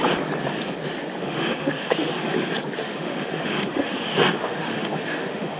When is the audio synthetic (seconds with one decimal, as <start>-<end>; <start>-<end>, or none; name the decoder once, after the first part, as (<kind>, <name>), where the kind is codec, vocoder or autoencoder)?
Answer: 1.2-2.1 (autoencoder, DAC-VAE); 2.8-5.6

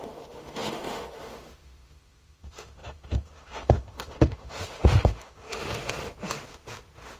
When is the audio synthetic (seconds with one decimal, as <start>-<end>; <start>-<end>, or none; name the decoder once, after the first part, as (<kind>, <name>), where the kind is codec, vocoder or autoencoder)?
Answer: 0.0-7.2 (autoencoder, DAC-VAE)

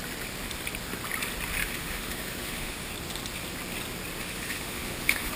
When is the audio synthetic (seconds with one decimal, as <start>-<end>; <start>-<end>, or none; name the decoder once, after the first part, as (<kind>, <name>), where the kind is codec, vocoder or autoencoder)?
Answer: 1.6-2.9 (autoencoder, DAC-VAE); 4.2-5.4

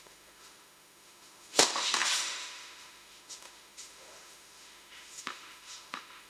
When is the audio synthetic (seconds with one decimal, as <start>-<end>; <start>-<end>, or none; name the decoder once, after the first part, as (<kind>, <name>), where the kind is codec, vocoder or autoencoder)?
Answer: 0.0-6.3 (autoencoder, DAC-VAE)

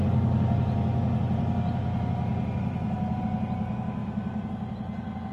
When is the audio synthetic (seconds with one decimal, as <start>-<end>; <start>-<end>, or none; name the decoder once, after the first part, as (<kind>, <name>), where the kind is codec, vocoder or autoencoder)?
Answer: none

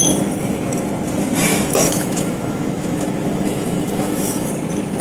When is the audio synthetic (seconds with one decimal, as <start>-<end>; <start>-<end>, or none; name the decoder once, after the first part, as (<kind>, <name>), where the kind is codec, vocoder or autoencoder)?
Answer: 1.5-4.5 (autoencoder, DAC-VAE)

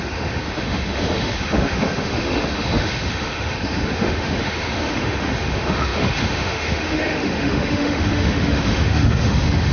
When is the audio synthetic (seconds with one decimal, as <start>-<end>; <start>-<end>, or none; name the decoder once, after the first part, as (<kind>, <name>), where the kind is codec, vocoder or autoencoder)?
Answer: 0.0-9.7 (autoencoder, DAC-VAE)